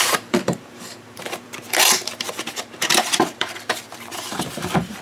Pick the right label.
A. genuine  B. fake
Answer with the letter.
B